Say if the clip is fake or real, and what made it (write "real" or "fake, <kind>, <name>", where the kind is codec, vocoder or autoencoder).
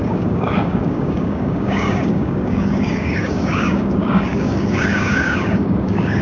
fake, codec, DAC